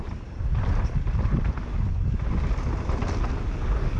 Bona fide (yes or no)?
yes